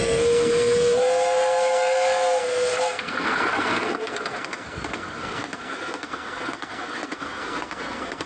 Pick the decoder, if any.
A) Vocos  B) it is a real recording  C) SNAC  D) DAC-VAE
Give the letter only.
C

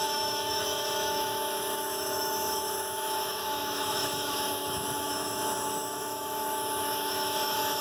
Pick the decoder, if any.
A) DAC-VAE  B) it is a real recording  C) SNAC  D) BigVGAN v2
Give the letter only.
A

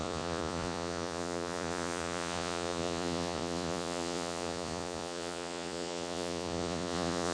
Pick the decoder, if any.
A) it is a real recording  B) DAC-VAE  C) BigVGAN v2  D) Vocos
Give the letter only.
D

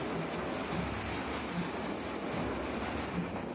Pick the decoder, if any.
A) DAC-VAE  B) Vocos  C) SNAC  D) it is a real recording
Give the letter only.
D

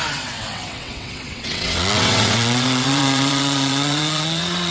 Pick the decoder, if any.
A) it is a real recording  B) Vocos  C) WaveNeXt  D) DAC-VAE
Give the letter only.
C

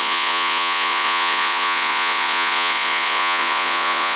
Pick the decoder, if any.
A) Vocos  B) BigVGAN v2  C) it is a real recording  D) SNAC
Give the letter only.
A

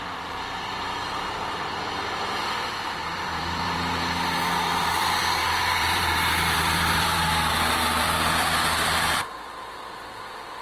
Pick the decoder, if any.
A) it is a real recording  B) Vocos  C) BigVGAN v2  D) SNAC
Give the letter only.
C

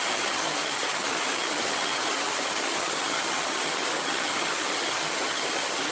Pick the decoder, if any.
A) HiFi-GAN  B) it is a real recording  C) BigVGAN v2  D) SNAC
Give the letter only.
A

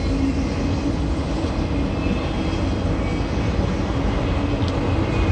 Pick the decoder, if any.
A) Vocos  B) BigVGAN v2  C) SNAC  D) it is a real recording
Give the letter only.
D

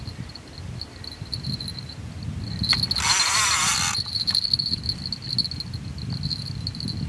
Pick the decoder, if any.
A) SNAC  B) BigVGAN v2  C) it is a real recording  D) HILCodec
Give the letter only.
C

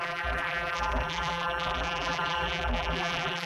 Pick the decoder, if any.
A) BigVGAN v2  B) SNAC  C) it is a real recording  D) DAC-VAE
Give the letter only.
A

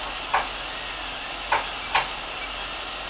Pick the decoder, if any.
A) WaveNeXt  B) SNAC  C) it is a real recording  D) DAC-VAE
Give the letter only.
C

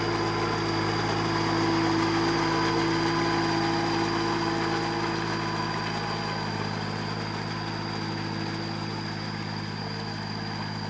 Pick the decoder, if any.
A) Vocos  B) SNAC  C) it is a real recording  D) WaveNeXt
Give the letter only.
C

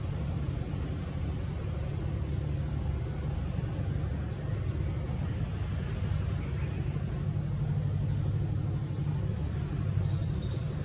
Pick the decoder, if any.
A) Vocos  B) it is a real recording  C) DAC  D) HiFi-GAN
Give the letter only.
B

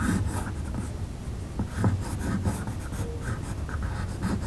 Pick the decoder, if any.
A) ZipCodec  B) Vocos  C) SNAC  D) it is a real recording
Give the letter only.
D